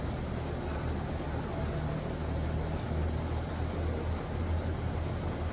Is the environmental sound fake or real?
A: real